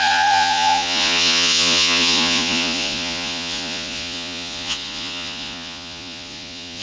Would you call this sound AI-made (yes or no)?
yes